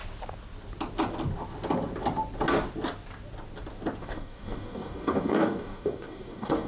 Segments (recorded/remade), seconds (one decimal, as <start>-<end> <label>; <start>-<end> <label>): 0.0-4.0 recorded; 4.0-6.7 remade